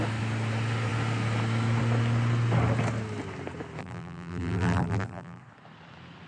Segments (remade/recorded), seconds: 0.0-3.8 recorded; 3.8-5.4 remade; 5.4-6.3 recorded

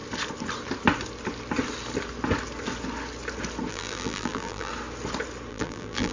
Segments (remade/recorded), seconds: 0.0-3.7 recorded; 3.7-4.7 remade; 4.7-5.5 recorded; 5.5-6.1 remade

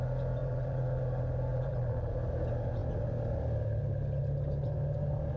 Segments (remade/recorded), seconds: 0.0-0.4 recorded; 0.4-1.0 remade; 1.0-1.5 recorded; 1.5-2.1 remade; 2.1-5.4 recorded

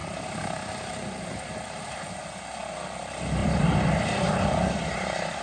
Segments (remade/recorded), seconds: 0.0-3.4 recorded; 3.4-5.4 remade